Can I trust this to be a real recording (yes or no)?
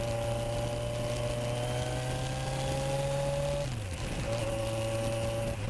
yes